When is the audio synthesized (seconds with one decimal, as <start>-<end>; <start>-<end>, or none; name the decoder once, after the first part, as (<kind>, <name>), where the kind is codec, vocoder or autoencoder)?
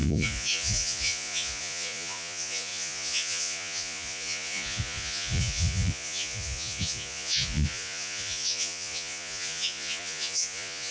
0.0-10.9 (vocoder, Vocos)